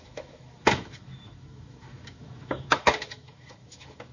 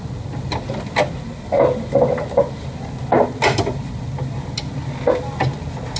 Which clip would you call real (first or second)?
second